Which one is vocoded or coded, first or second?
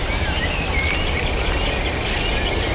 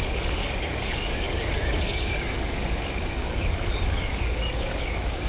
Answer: second